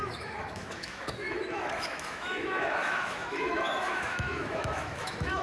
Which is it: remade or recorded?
remade